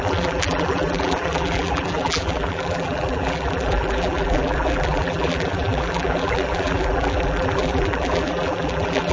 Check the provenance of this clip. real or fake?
fake